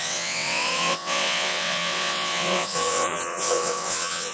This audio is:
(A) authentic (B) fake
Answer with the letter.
B